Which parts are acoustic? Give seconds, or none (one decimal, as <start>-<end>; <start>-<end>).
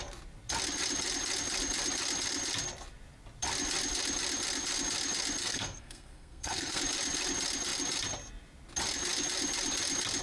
0.0-5.4; 6.8-10.2